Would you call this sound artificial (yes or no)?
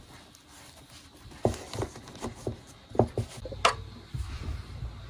no